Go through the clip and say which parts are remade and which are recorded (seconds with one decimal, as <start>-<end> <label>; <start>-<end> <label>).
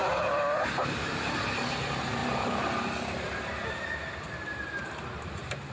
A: 0.0-5.7 recorded